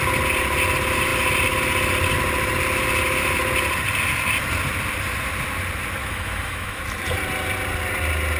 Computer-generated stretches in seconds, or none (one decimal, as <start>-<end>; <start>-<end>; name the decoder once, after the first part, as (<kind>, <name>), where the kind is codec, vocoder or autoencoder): 6.0-6.8 (autoencoder, DAC-VAE)